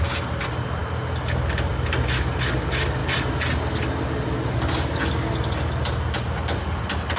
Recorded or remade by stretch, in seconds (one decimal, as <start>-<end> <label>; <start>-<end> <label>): 0.0-7.2 recorded